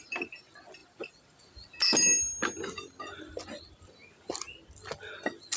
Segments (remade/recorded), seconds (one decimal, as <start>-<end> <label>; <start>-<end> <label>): 0.0-5.6 recorded